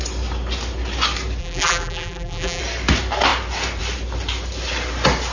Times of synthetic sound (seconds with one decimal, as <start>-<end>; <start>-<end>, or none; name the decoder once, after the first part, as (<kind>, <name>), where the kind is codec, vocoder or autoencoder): 1.4-2.6 (vocoder, BigVGAN v2)